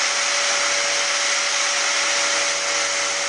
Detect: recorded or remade recorded